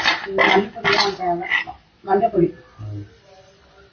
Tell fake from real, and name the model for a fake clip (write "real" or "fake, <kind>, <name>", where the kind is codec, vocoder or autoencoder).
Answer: real